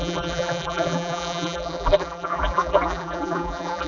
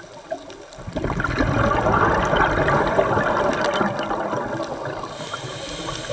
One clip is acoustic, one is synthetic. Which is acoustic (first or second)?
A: second